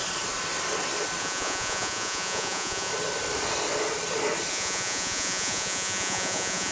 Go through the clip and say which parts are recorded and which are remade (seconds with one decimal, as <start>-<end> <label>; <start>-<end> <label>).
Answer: 0.0-1.2 recorded; 1.2-2.9 remade; 2.9-4.5 recorded; 4.5-6.7 remade